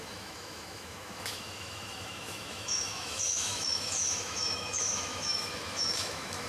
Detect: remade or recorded remade